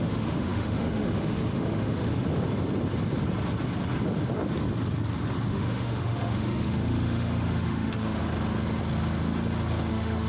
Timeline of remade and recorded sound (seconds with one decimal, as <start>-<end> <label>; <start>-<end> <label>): 0.0-2.1 remade; 2.1-5.5 recorded; 5.5-8.2 remade; 8.2-9.9 recorded; 9.9-10.3 remade